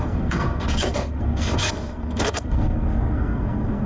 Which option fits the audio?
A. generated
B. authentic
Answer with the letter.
A